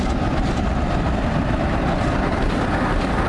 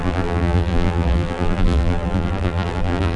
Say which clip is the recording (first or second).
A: first